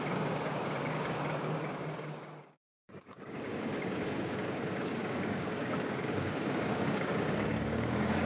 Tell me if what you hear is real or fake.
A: fake